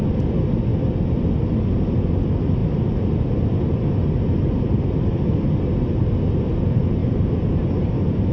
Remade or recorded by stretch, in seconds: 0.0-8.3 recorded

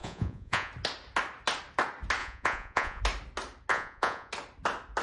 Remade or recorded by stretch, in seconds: 0.0-0.7 remade; 0.7-2.2 recorded; 2.2-3.0 remade; 3.0-3.7 recorded; 3.7-4.3 remade; 4.3-5.0 recorded

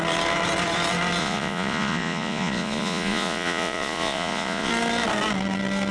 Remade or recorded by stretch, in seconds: 0.0-1.2 recorded; 1.2-4.7 remade; 4.7-5.9 recorded

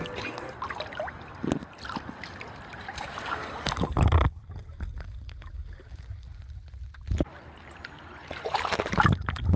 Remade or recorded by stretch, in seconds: 0.0-9.6 recorded

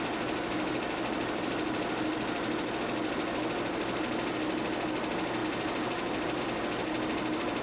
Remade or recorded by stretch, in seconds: 0.0-7.6 recorded

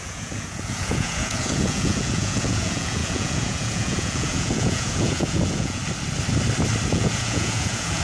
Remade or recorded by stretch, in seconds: 0.0-5.8 remade; 5.8-6.9 recorded; 6.9-8.0 remade

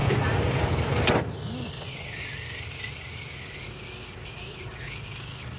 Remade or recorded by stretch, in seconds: 0.0-5.6 recorded

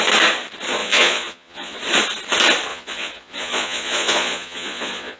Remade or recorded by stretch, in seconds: 0.0-0.8 recorded; 0.8-1.8 remade; 1.8-2.7 recorded; 2.7-5.2 remade